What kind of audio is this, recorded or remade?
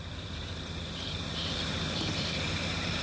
remade